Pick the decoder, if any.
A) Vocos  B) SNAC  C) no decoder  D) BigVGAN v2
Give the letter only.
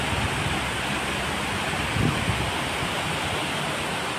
C